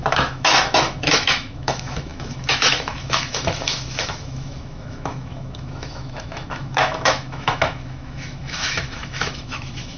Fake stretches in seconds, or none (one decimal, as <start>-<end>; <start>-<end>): 0.0-10.0